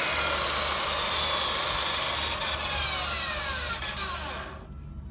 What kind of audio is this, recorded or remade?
recorded